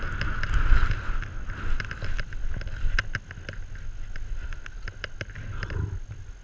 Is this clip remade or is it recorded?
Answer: recorded